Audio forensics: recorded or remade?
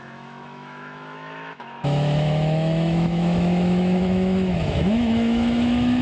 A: remade